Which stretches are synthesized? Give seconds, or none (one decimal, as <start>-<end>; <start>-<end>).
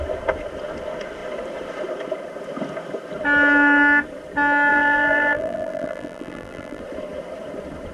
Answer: 4.7-6.8